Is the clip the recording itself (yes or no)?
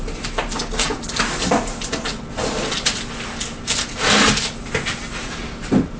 yes